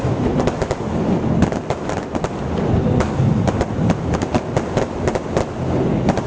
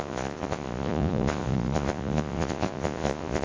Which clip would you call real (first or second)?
first